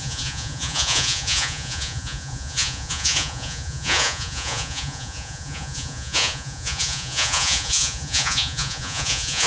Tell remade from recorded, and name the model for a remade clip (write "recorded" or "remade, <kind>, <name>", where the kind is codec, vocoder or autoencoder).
remade, vocoder, Vocos